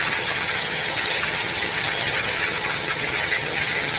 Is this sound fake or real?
fake